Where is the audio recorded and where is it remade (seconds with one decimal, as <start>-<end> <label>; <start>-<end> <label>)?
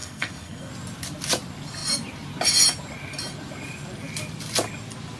0.0-0.7 remade; 0.7-5.2 recorded